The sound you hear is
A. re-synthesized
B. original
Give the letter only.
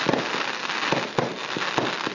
B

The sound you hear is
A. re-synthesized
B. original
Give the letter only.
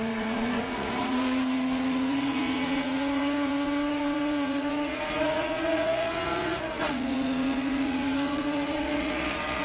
A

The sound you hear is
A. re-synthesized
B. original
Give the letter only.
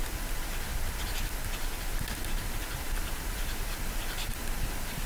A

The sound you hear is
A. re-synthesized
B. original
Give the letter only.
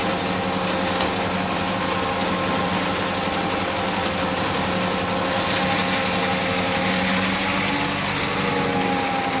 B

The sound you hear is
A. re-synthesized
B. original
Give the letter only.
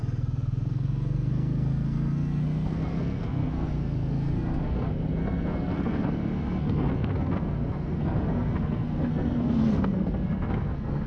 A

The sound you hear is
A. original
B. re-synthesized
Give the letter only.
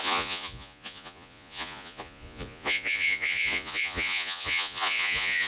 B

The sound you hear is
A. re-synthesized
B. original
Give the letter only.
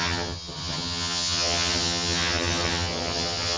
A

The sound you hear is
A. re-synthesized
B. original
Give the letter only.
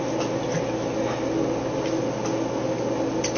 B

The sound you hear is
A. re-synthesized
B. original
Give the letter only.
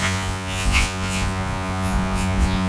A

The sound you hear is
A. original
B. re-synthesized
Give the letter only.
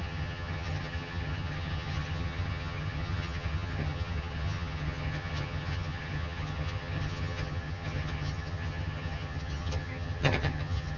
B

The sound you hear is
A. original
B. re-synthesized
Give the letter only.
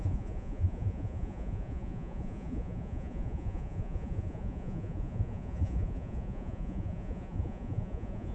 B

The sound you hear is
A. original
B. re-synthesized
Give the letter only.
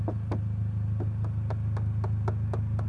A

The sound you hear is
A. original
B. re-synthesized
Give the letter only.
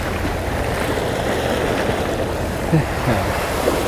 A